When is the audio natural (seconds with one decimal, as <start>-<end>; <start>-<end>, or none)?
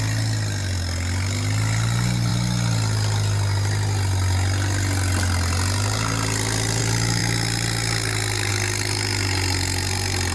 0.0-10.3